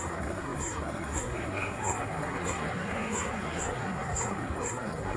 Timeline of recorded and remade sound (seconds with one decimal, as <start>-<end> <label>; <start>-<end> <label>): 0.0-5.2 remade